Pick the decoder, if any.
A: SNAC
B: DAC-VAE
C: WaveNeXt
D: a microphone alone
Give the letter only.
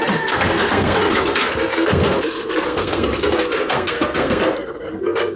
A